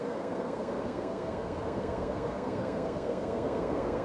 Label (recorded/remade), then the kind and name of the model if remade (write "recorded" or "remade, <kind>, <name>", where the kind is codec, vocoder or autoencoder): remade, codec, SNAC